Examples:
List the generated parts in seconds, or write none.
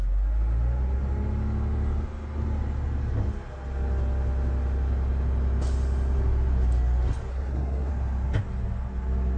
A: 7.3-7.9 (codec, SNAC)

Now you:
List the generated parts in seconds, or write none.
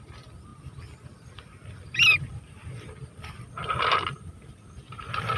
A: none